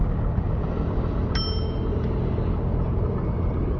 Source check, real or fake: real